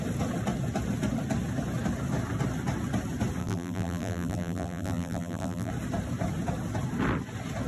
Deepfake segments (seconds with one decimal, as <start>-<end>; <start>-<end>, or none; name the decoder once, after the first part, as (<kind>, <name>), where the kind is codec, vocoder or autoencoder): 3.4-5.7 (vocoder, BigVGAN v2)